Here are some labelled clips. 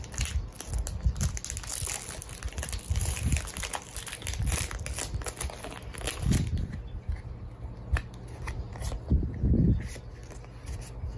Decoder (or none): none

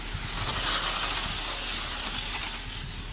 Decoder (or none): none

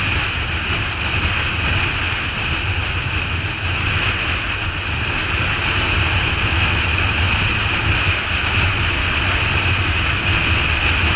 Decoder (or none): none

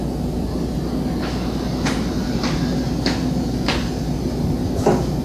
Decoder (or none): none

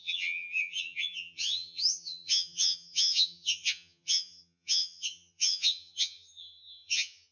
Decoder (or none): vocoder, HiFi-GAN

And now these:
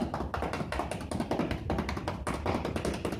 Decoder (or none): none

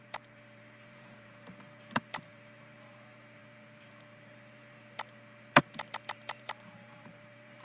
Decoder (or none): vocoder, BigVGAN v2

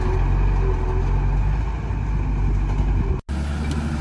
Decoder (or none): none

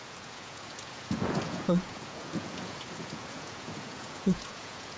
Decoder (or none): vocoder, Vocos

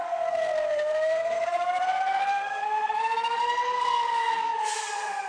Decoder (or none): codec, SNAC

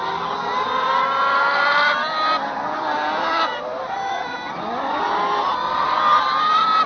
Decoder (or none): none